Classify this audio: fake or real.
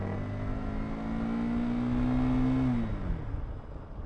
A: real